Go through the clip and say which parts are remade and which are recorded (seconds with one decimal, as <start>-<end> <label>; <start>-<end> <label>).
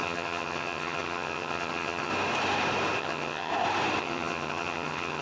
0.0-2.1 remade; 2.1-3.0 recorded; 3.0-3.5 remade; 3.5-4.0 recorded; 4.0-5.2 remade